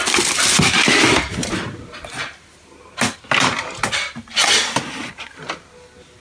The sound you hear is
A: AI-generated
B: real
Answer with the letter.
B